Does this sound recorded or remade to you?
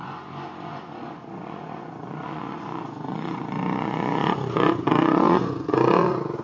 remade